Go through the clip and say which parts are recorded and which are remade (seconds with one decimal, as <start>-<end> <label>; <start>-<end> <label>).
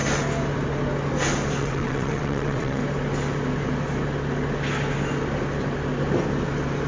0.0-1.6 recorded; 1.6-2.8 remade; 2.8-6.9 recorded